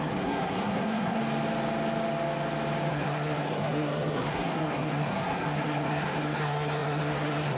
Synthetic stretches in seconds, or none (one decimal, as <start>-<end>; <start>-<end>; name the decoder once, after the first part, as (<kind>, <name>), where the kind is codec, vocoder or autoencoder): 0.0-1.2 (codec, SNAC); 2.9-7.6